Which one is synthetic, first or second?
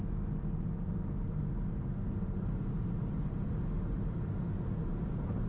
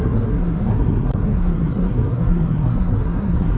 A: second